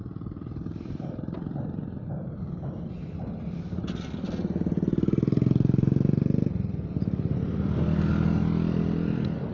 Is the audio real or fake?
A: real